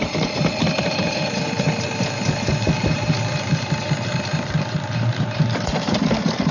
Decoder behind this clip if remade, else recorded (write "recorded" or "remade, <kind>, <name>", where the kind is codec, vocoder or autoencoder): remade, vocoder, BigVGAN v2